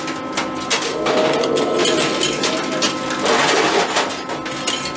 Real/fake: real